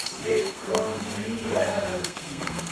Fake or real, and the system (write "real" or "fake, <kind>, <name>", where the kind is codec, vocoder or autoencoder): fake, codec, SNAC